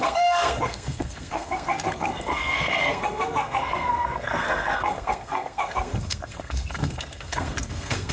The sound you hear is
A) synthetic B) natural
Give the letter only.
A